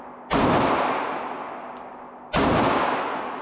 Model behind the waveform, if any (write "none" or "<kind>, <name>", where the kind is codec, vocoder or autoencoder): none